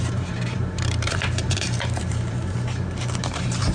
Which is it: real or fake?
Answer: fake